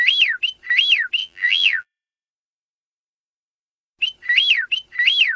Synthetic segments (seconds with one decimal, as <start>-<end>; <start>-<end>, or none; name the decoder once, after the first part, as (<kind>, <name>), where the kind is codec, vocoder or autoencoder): 1.2-2.3 (vocoder, BigVGAN v2)